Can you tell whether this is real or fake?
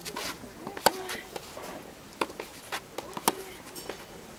real